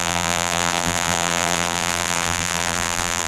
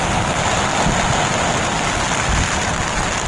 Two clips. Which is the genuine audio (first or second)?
second